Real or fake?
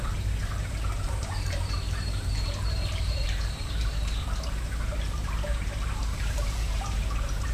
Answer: fake